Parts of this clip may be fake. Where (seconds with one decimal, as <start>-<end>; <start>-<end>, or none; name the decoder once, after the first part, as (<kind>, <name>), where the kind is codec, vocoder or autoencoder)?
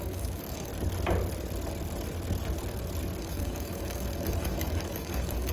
0.0-0.7 (codec, DAC); 3.2-5.5